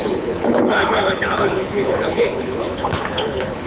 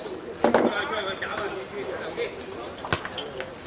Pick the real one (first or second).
second